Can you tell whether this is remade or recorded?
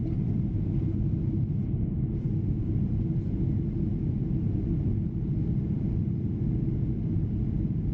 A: recorded